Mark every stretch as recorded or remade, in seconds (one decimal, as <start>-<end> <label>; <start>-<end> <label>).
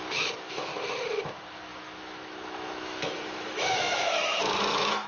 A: 0.0-0.7 remade; 0.7-1.2 recorded; 1.2-5.1 remade